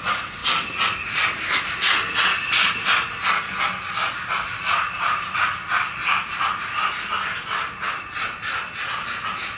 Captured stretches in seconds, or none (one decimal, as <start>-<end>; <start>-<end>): 0.0-9.6